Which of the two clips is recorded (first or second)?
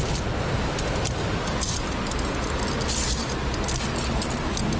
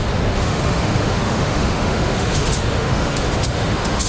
first